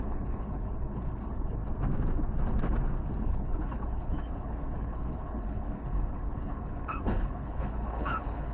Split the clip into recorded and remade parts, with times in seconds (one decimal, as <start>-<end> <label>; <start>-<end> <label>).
0.0-1.6 remade; 1.6-3.2 recorded; 3.2-8.5 remade